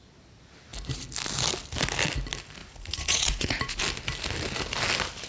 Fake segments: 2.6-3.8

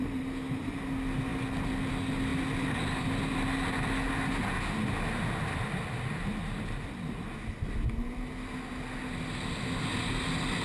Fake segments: none

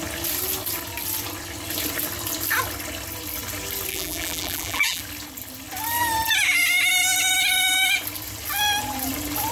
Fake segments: 3.9-5.0

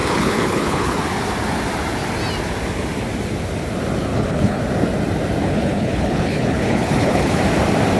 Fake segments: 0.0-1.0; 4.1-4.6; 5.4-7.4

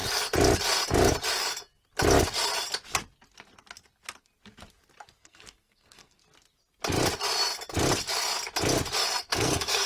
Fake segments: 5.2-6.2; 9.2-9.9

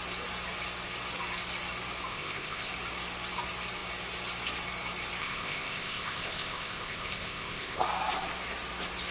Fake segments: 2.1-2.7; 5.2-7.8

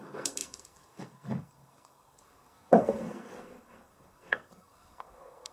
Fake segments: 0.0-5.5